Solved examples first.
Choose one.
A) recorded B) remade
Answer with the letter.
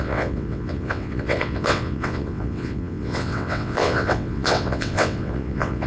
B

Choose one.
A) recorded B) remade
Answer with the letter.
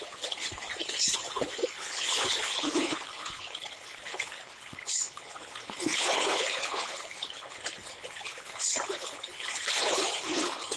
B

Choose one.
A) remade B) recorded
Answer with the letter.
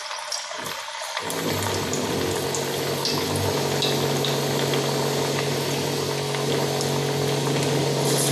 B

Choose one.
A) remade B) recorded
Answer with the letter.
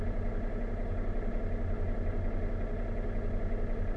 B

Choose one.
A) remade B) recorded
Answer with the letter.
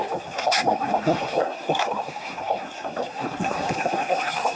A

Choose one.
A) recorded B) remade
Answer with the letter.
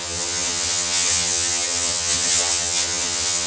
B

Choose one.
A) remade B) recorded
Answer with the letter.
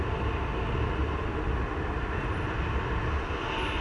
B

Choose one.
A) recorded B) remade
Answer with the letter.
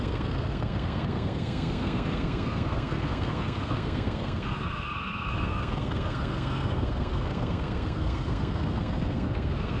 B